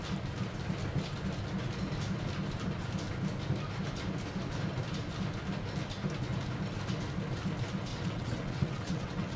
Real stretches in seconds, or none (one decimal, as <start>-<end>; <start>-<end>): 0.0-7.9